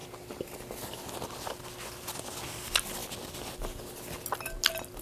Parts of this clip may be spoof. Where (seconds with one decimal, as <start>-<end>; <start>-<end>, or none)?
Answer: none

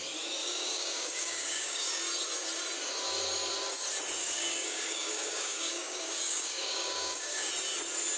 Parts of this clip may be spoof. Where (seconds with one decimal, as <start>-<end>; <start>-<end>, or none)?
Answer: 0.4-2.0; 4.2-7.5

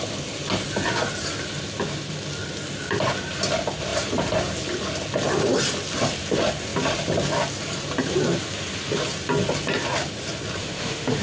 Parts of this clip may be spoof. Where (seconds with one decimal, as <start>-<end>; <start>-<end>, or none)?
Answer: 10.6-11.2

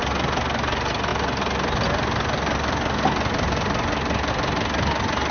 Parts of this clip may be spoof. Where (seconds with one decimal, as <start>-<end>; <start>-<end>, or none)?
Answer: none

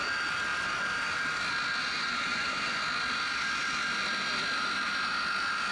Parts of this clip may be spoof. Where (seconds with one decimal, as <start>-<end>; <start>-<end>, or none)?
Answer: 1.8-2.8